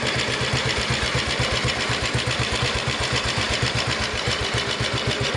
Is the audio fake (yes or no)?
yes